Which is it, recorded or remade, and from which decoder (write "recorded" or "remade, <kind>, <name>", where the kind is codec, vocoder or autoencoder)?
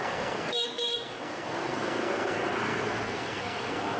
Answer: remade, codec, SNAC